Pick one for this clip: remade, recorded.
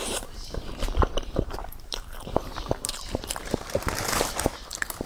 remade